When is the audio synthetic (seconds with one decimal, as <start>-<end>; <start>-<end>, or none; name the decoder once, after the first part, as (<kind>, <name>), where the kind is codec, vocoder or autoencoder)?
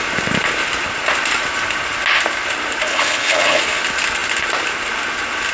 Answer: 2.9-3.6 (vocoder, HiFi-GAN)